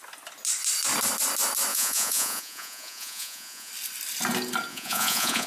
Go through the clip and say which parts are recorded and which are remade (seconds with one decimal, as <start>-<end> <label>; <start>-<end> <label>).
0.0-1.7 recorded; 1.7-3.7 remade; 3.7-4.7 recorded; 4.7-5.5 remade